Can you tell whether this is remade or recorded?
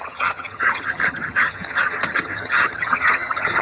remade